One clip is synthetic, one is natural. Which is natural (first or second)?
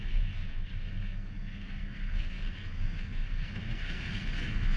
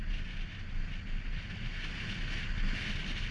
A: second